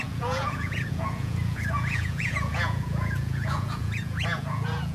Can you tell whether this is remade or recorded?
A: remade